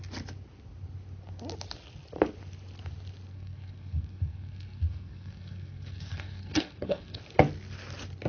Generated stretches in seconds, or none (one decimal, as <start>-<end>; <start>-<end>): 3.3-7.2